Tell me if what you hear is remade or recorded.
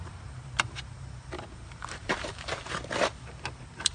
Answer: remade